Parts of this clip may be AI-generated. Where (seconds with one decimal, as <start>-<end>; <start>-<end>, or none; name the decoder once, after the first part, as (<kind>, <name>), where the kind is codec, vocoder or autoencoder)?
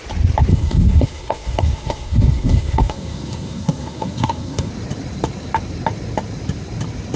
0.5-4.7 (codec, SNAC)